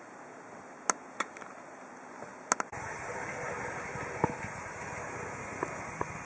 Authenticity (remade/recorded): recorded